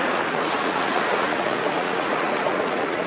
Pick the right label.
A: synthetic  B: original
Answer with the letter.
A